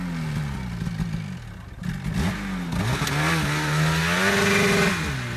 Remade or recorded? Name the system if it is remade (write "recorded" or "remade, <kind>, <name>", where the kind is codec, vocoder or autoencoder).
recorded